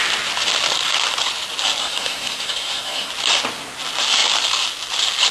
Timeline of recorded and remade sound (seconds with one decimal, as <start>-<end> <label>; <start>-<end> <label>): 0.0-1.8 recorded; 1.8-3.1 remade; 3.1-5.3 recorded